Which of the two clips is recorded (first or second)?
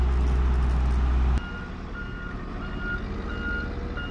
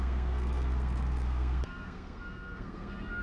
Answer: first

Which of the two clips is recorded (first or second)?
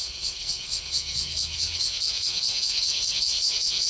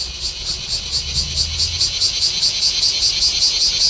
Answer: second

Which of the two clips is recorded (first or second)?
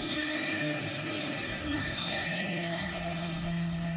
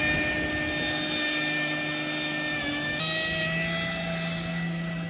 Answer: second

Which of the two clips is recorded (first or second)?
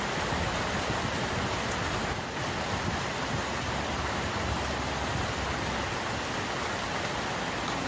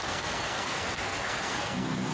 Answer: first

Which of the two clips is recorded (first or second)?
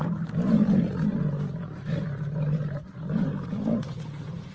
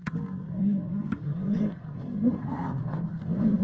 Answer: first